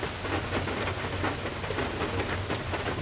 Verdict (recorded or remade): recorded